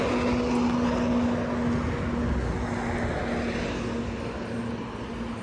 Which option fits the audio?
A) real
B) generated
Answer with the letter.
A